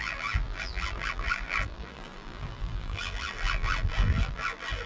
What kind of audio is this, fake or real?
fake